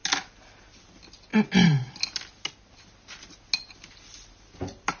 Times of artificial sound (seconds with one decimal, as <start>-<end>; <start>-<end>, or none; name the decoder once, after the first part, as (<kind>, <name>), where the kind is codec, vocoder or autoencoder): none